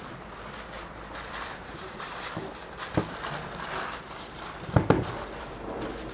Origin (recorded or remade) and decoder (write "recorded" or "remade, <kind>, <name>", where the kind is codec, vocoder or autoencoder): remade, vocoder, BigVGAN v2